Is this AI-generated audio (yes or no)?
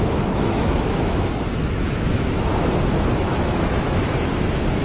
yes